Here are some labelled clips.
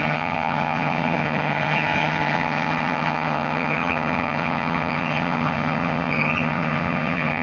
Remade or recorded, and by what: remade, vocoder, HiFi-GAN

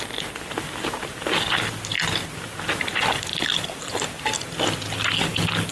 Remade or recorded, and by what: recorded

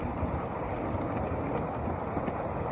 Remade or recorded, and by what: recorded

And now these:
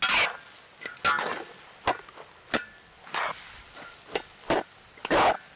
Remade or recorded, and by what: recorded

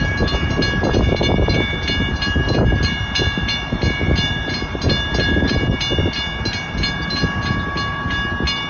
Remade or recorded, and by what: recorded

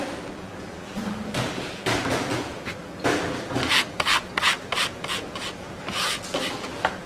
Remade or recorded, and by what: remade, vocoder, BigVGAN v2